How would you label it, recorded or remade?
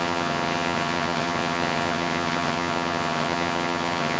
remade